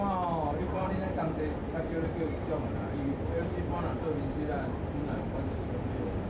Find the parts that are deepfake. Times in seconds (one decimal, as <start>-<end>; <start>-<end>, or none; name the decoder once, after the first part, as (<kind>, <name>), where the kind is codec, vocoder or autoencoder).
0.6-1.2 (vocoder, BigVGAN v2); 1.6-3.8

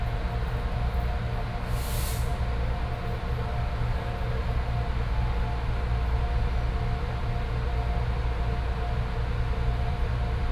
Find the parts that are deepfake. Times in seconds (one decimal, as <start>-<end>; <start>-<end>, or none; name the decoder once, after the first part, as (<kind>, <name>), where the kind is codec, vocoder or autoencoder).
9.7-10.5 (vocoder, BigVGAN v2)